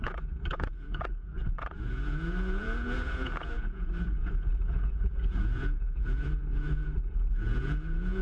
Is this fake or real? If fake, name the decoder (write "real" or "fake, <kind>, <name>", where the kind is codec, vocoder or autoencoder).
fake, vocoder, Vocos